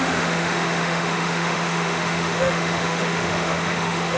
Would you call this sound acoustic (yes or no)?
no